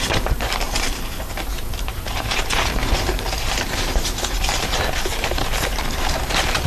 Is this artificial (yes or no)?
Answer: yes